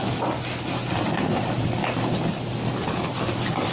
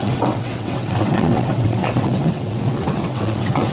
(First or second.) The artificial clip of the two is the second